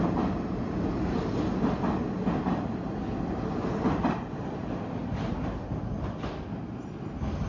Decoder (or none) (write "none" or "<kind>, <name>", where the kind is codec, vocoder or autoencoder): none